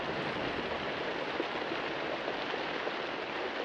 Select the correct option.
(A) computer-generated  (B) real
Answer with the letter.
B